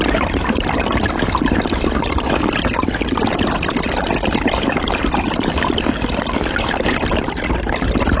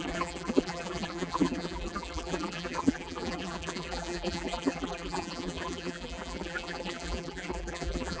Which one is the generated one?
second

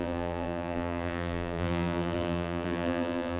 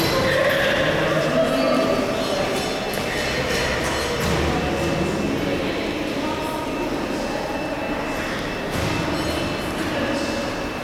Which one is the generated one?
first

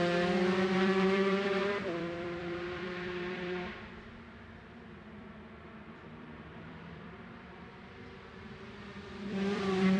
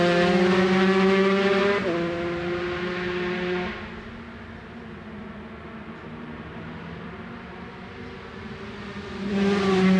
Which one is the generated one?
first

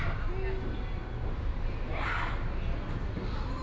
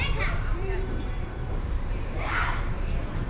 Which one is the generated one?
second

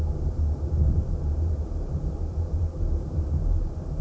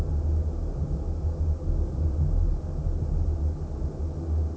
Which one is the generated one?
first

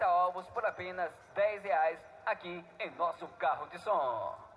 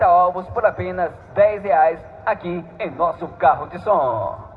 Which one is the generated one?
second